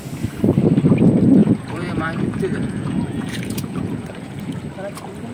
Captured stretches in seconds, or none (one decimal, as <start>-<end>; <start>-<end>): 0.0-1.4; 4.6-5.3